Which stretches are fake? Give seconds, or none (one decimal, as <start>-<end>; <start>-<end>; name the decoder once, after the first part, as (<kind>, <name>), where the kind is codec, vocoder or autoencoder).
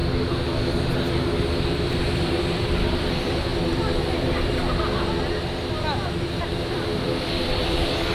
2.0-3.5 (vocoder, BigVGAN v2); 6.7-8.1